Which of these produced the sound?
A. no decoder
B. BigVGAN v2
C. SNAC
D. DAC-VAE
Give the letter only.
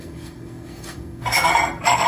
C